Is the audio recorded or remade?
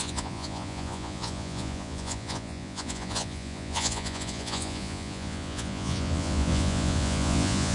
remade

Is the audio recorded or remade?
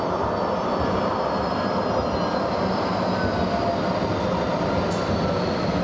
recorded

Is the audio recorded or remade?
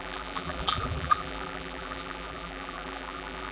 remade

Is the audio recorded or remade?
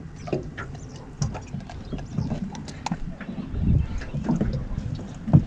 recorded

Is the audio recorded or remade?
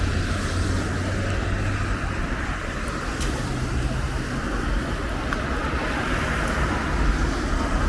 recorded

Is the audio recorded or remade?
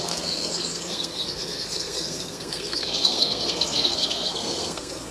remade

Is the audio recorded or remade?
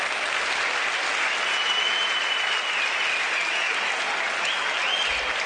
recorded